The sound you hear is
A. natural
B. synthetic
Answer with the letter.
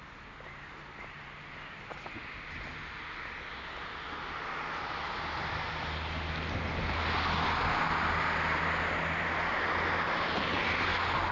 A